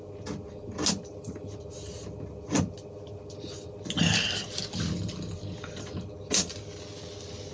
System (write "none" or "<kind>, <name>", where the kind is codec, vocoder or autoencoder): none